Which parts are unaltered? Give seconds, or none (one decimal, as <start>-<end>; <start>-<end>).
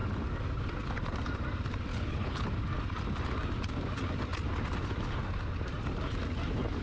0.0-1.9; 2.5-6.8